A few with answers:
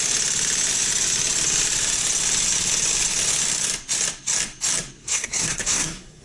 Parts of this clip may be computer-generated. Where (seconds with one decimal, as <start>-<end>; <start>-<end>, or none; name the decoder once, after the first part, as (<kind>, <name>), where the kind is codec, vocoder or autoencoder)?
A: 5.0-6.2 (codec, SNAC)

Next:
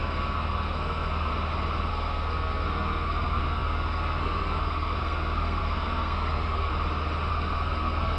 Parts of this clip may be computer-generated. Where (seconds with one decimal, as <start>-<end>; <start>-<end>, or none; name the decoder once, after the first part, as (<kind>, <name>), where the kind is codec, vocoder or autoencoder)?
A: 0.0-1.3 (codec, SNAC); 1.9-6.7; 7.3-8.2

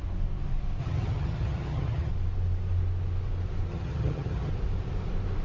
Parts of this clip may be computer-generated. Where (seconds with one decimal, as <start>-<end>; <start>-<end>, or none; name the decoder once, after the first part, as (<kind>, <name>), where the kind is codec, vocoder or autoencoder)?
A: 0.8-2.1 (vocoder, HiFi-GAN); 3.7-4.5

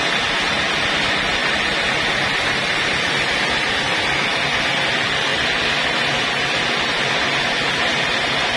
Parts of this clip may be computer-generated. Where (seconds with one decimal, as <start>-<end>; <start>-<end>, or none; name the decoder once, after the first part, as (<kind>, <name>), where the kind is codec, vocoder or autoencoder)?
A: none

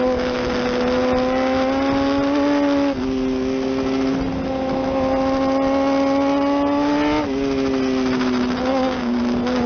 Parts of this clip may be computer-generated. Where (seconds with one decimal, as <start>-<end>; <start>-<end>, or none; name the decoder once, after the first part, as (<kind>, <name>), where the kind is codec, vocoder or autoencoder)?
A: 8.7-9.2 (codec, DAC)

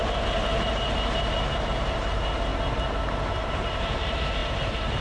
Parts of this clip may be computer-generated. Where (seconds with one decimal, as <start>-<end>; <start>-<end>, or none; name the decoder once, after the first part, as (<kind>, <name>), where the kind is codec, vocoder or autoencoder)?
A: 0.0-2.5 (vocoder, BigVGAN v2); 3.5-5.0

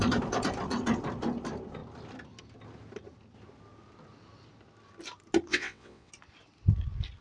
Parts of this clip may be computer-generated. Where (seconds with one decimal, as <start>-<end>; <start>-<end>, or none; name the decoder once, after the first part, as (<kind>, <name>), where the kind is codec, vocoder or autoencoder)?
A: 5.5-6.1 (vocoder, WaveNeXt)